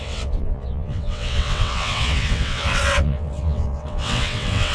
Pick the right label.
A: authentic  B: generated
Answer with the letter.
B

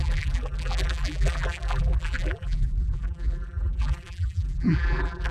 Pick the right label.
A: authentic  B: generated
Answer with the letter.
B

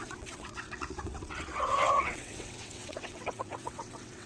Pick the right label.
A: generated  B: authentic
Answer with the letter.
A